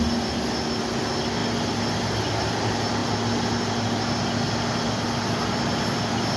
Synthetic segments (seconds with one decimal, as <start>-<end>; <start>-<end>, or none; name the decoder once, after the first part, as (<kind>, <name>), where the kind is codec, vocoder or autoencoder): none